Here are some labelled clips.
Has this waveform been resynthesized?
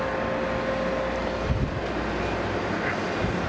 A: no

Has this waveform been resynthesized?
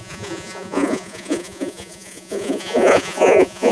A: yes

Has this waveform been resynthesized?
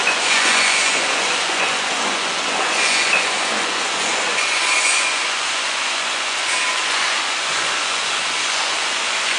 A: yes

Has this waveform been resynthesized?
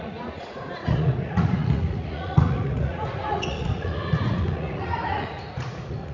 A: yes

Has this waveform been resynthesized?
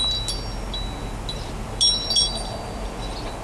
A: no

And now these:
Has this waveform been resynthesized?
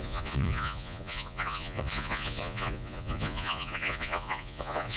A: yes